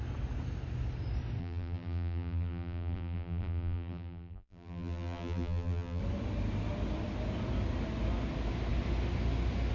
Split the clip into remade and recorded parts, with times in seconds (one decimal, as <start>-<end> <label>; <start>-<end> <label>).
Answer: 0.0-1.4 recorded; 1.4-6.0 remade; 6.0-9.7 recorded